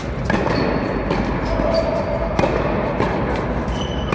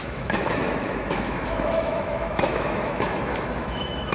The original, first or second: first